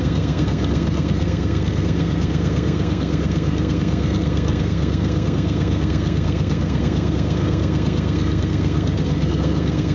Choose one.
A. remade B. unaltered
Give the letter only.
A